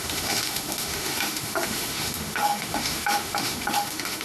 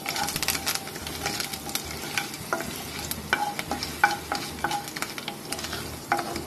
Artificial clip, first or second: first